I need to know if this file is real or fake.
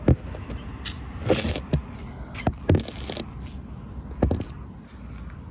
real